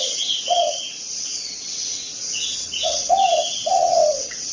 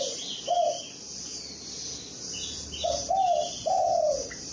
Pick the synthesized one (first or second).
first